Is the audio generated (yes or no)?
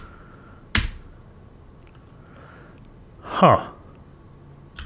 no